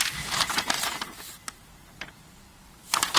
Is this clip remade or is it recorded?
remade